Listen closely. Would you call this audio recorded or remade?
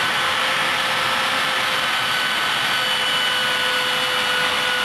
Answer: recorded